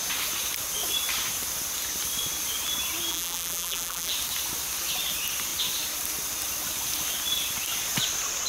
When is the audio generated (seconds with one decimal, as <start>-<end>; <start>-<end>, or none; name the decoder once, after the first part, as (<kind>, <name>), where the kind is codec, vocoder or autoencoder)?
3.1-4.1 (vocoder, BigVGAN v2)